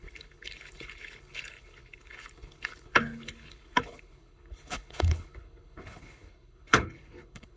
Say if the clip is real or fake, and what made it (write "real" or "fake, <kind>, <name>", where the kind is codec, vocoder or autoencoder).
fake, codec, HILCodec